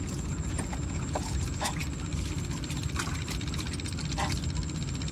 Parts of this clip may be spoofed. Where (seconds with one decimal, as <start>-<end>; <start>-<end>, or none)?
0.0-1.8